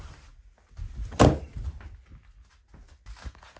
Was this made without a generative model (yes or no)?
yes